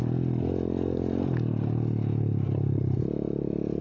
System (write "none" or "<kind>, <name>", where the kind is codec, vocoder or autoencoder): none